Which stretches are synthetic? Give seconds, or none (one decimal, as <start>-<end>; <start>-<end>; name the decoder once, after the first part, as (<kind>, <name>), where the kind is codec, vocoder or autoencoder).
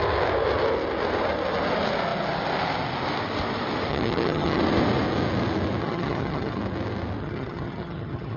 3.9-4.6 (vocoder, HiFi-GAN); 5.8-6.6; 7.2-8.4